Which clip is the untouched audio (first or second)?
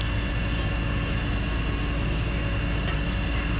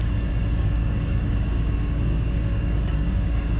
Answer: first